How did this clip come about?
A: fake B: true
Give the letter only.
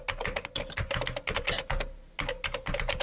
B